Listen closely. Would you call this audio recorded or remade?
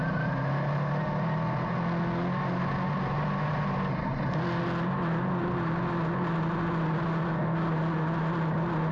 recorded